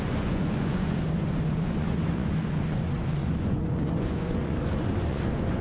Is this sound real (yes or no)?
no